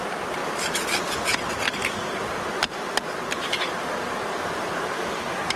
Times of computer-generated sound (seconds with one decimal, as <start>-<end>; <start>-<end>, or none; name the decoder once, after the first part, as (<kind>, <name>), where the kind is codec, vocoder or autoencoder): 0.0-0.4 (vocoder, BigVGAN v2); 3.8-5.6